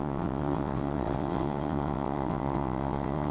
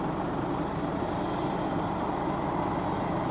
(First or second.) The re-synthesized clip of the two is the first